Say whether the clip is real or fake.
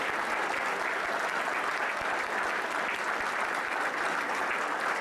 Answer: real